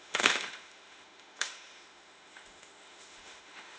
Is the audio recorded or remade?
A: remade